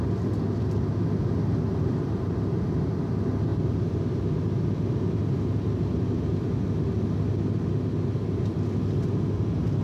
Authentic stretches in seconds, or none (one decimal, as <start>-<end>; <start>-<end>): 0.0-1.7; 2.8-3.5; 4.0-9.8